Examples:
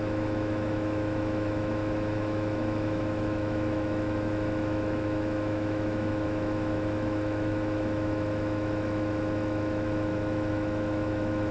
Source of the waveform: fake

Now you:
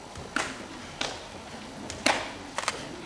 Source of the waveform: real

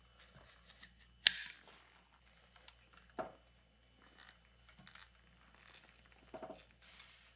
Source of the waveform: real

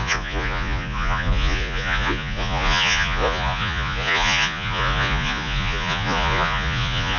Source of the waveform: fake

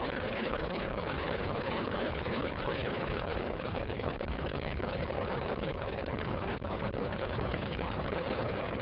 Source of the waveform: fake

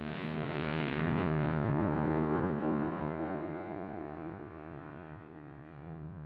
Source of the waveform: fake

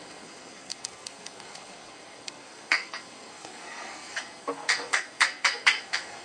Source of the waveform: fake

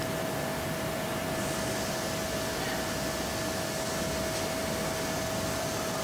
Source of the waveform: real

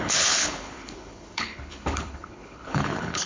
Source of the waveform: fake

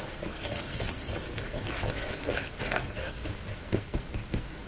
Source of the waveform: fake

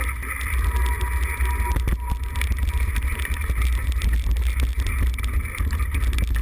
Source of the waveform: real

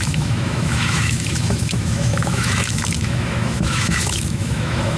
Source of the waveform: fake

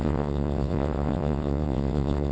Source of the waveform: fake